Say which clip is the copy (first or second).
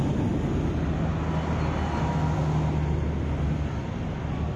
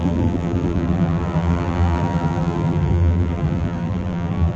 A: second